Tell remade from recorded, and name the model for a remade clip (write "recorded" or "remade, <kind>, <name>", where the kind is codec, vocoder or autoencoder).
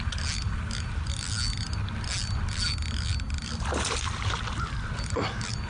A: recorded